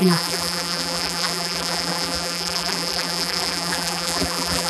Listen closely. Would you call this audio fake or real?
fake